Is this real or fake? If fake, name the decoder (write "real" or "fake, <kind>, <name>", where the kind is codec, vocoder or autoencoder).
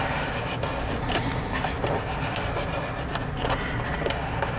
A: real